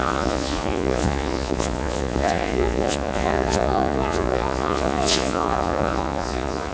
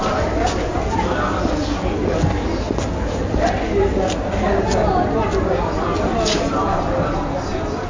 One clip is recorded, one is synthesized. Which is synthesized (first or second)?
first